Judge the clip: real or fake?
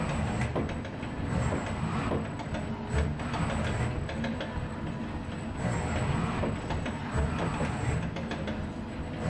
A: real